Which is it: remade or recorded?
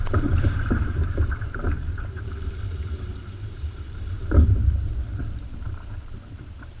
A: remade